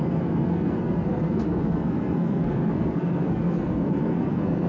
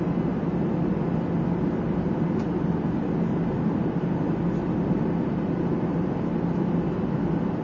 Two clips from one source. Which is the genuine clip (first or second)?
second